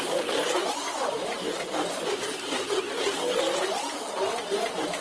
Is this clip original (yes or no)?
yes